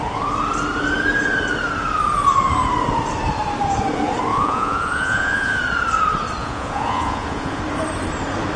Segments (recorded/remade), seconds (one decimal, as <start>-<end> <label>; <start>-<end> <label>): 0.0-4.3 recorded; 4.3-5.6 remade; 5.6-6.4 recorded; 6.4-7.6 remade; 7.6-8.6 recorded